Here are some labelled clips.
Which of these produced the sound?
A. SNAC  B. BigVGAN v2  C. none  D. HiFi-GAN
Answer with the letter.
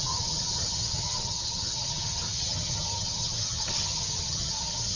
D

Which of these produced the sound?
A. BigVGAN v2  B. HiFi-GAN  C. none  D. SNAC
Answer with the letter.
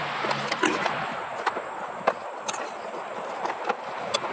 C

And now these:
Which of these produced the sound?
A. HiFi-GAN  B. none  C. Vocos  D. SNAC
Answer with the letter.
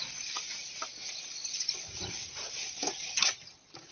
B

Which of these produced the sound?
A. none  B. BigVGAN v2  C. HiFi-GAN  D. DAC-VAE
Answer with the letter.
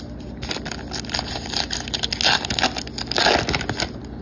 A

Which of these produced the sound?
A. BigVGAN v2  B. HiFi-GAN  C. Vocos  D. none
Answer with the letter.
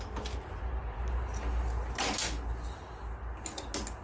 D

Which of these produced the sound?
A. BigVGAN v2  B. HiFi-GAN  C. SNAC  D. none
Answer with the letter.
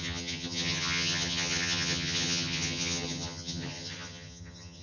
B